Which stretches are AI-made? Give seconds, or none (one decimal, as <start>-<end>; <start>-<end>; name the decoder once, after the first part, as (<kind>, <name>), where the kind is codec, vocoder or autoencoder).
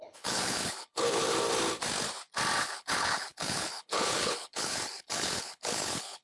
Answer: 0.0-1.2 (codec, HILCodec); 2.6-6.2